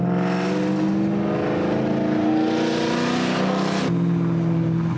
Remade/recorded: recorded